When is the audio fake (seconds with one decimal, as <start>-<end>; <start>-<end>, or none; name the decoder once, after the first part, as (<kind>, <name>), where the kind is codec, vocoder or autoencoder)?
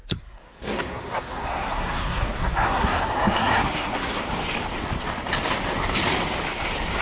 0.0-4.2 (codec, SNAC)